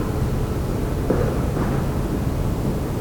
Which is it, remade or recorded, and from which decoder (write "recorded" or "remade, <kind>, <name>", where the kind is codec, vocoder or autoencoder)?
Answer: recorded